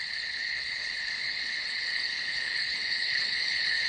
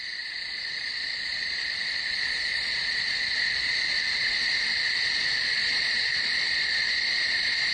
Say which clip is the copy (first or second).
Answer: first